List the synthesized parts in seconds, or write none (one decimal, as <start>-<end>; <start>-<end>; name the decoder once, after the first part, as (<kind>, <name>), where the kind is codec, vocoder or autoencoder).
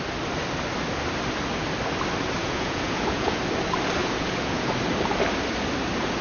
2.4-3.4 (vocoder, Vocos); 4.0-4.7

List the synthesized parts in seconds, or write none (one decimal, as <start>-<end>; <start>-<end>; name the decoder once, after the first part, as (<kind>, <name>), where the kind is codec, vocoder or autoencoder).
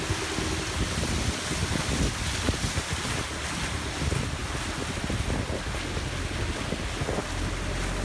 none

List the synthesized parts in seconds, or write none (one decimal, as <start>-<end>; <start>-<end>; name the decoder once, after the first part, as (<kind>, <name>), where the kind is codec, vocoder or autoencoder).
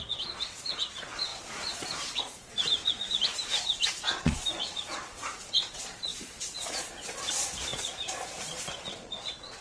0.0-9.6 (vocoder, Vocos)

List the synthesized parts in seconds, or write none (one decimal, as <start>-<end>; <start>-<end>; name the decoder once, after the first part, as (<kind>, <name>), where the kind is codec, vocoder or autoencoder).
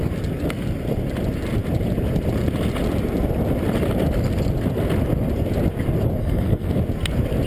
6.2-6.8 (codec, SNAC)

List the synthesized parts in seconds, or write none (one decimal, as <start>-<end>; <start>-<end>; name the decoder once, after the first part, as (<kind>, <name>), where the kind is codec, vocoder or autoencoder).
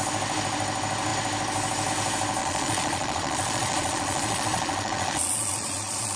2.4-6.2 (vocoder, Vocos)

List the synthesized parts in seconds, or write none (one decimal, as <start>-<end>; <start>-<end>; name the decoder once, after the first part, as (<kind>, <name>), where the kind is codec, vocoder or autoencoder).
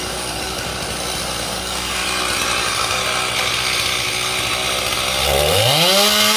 0.0-0.7 (codec, DAC); 1.4-2.0; 2.6-3.0